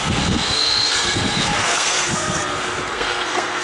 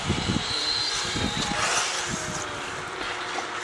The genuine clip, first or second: second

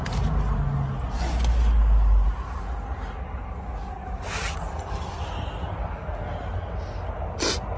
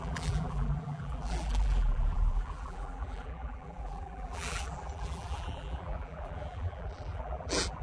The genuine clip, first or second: first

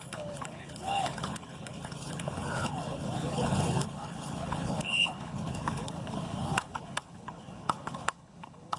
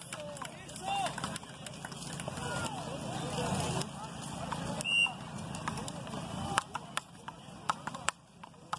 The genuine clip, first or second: second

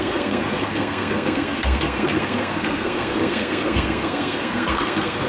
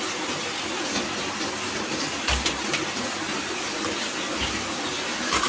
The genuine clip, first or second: second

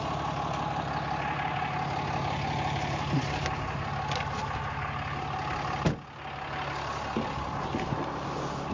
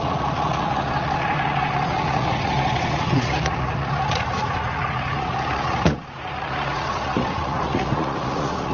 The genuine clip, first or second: first